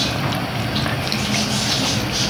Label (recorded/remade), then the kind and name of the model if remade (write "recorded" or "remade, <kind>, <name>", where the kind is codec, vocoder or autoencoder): recorded